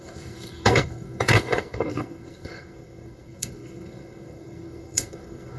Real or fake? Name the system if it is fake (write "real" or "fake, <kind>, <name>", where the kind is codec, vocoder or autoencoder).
fake, codec, SNAC